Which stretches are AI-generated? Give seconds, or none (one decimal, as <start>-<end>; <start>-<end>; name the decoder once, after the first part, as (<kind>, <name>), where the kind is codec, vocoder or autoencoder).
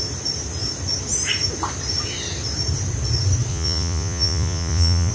3.5-5.1 (vocoder, Vocos)